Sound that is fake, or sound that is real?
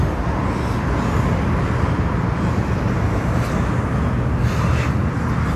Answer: real